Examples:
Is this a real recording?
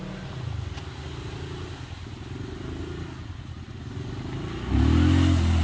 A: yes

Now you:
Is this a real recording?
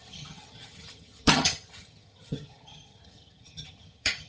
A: no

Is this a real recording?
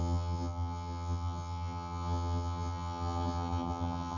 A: no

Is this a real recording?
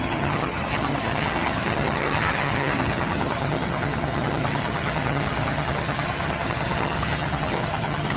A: no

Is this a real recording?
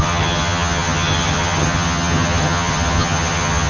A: no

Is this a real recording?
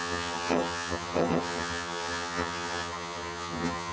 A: no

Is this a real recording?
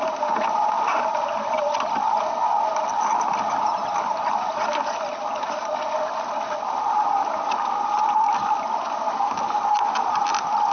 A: yes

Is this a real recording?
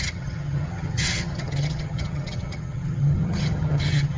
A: no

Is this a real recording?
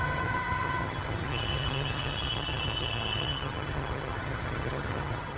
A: no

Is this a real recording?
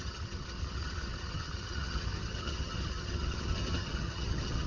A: no